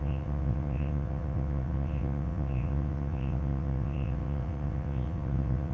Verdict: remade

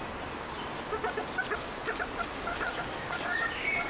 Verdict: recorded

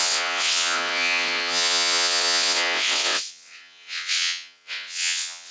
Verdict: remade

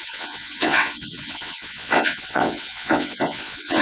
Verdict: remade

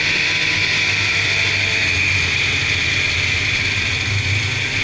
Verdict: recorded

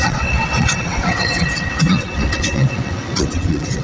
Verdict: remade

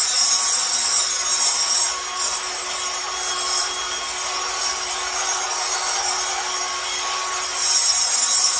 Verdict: recorded